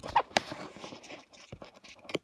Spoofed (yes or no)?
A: yes